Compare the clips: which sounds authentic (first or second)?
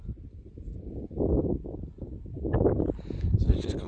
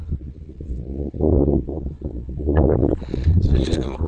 first